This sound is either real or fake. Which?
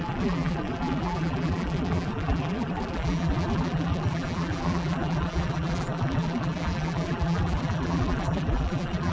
fake